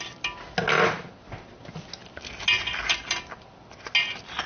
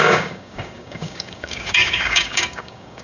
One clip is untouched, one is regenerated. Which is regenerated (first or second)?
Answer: second